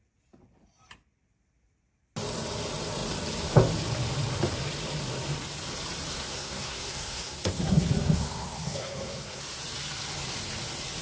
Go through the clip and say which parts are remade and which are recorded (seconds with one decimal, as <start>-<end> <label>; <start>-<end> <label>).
0.0-6.1 recorded; 6.1-9.4 remade; 9.4-11.0 recorded